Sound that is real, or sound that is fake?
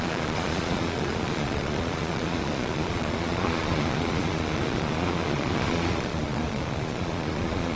fake